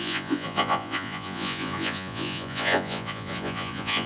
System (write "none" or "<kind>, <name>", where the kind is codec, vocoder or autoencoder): vocoder, Vocos